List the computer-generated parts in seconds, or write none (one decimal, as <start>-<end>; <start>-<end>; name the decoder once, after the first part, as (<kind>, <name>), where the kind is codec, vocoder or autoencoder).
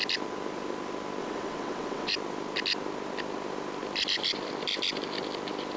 1.2-2.1 (vocoder, WaveNeXt)